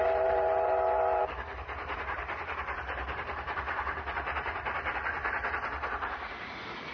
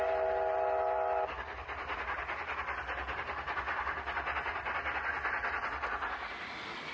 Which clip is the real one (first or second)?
second